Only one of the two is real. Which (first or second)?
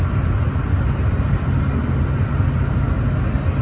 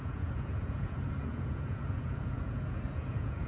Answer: first